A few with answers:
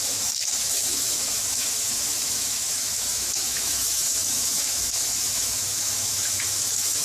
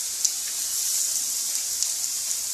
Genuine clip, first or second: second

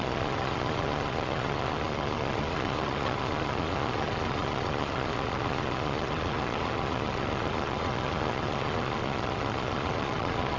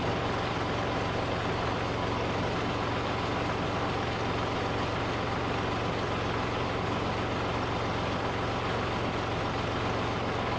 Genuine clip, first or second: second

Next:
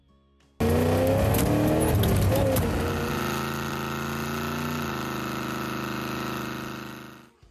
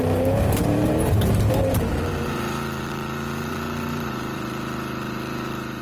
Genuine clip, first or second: first